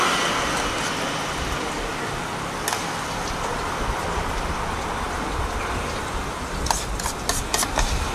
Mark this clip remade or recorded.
recorded